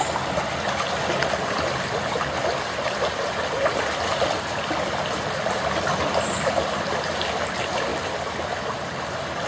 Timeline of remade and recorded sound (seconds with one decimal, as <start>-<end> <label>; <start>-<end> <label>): 0.0-9.5 recorded